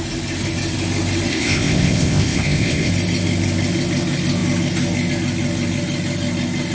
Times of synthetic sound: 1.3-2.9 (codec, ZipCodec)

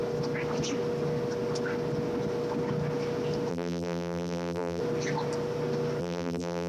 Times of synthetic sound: 3.5-4.8 (vocoder, BigVGAN v2); 6.0-6.7

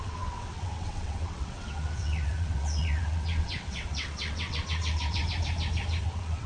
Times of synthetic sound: 0.0-5.2 (vocoder, WaveNeXt); 6.0-6.5

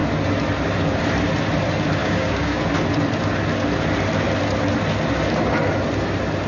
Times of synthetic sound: 2.0-2.6 (codec, DAC)